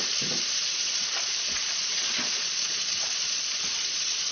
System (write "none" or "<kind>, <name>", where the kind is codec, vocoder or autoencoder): vocoder, Vocos